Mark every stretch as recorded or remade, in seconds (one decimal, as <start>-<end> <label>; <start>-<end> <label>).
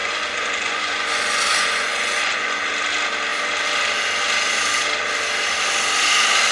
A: 0.0-2.6 remade; 2.6-6.5 recorded